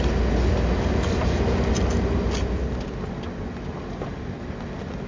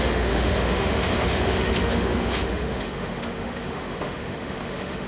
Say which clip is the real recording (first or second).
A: first